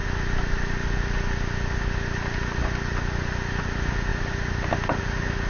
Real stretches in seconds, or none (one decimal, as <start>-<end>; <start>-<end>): 0.0-5.5